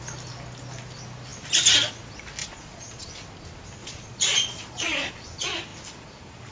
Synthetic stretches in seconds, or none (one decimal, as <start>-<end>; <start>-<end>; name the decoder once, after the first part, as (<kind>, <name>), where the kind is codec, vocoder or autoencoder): 2.4-3.1 (vocoder, Vocos); 3.8-5.1